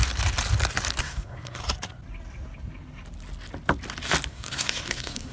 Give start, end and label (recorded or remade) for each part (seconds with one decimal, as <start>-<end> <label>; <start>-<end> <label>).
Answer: 0.0-1.0 recorded; 1.0-1.6 remade; 1.6-4.3 recorded; 4.3-5.3 remade